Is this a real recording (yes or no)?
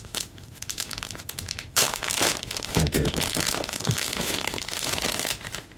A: no